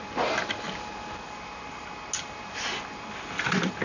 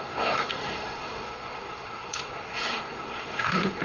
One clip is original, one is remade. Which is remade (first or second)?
second